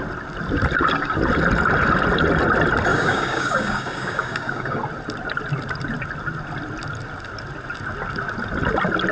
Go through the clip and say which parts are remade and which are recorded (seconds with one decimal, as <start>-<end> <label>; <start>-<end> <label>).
0.0-2.9 recorded; 2.9-4.8 remade; 4.8-9.1 recorded